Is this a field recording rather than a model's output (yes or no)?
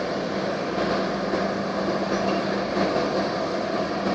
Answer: yes